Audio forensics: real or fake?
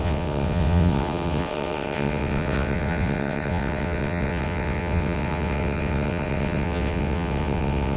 fake